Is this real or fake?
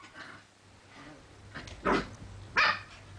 real